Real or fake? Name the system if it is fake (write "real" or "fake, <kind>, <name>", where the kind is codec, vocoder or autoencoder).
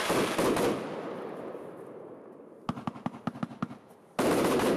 real